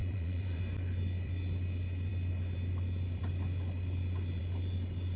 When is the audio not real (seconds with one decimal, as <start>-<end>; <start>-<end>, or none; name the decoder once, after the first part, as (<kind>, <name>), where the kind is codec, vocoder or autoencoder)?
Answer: 0.0-0.6 (vocoder, Vocos)